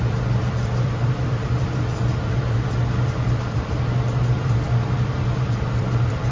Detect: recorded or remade remade